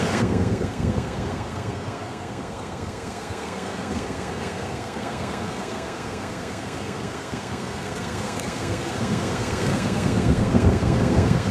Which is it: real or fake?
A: fake